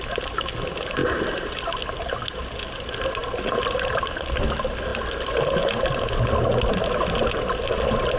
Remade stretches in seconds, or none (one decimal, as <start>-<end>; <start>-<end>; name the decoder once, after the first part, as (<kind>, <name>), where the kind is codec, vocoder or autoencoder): none